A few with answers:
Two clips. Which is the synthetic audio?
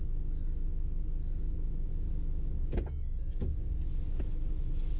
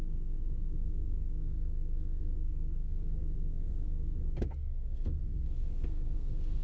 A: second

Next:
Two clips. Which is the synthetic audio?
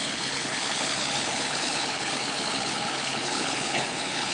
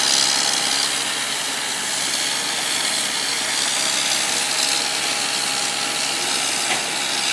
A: first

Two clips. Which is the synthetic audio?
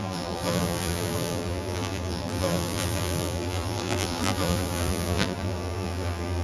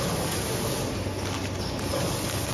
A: first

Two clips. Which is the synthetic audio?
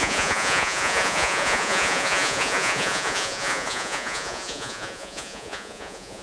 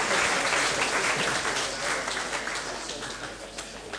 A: first